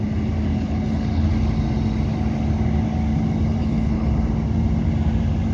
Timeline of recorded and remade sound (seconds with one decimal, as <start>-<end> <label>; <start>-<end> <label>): 0.0-0.5 recorded; 0.5-1.3 remade; 1.3-3.6 recorded; 3.6-4.1 remade; 4.1-5.5 recorded